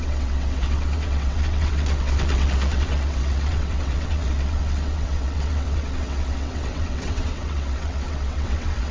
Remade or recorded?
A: remade